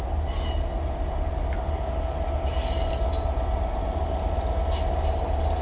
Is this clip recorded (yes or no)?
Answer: yes